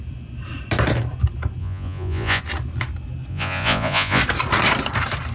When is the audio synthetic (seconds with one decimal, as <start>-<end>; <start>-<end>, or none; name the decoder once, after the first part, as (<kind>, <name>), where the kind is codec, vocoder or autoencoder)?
1.6-2.4 (vocoder, Vocos); 3.3-4.2